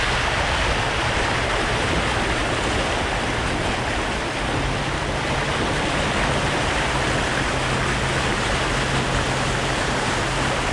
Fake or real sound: real